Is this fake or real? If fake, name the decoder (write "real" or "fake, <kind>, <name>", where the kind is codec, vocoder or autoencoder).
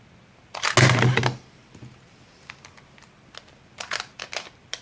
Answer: real